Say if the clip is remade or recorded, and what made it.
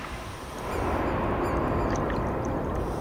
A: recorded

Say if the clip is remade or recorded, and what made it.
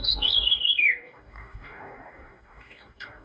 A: remade, codec, DAC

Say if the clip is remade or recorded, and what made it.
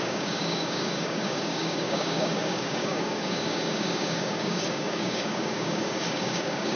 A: remade, codec, DAC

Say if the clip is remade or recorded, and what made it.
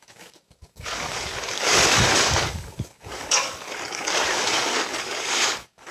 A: remade, codec, DAC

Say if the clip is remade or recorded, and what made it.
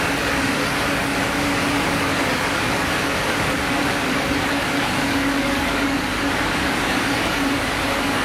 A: remade, codec, DAC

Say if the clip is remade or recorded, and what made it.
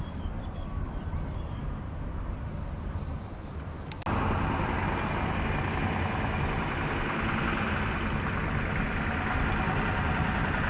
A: recorded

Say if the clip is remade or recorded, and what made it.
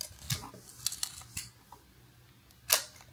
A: recorded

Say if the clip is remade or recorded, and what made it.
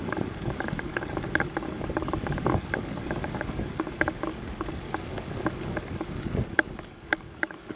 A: remade, codec, DAC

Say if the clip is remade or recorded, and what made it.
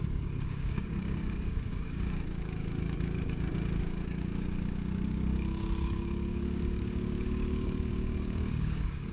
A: remade, codec, DAC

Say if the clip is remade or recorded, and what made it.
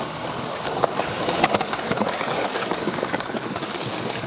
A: remade, codec, DAC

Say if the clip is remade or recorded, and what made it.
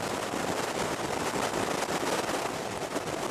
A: recorded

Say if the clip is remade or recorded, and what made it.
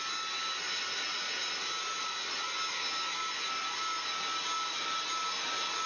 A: recorded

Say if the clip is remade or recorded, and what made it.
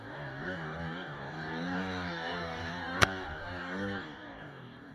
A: remade, codec, DAC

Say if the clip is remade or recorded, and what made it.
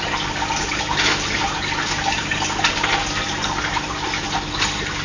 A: recorded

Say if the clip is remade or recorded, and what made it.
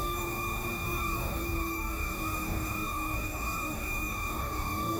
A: remade, codec, DAC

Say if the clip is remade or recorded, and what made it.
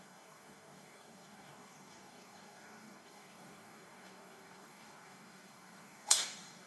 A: remade, codec, DAC